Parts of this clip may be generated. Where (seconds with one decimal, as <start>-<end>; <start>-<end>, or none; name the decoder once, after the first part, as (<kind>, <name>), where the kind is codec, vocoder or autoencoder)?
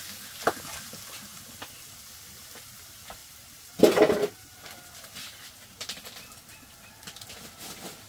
none